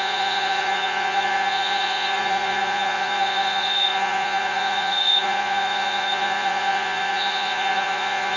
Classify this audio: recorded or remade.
remade